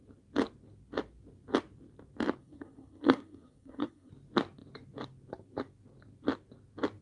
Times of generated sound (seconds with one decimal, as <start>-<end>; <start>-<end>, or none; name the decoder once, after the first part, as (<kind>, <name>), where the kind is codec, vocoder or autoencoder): 2.4-4.1 (codec, SNAC)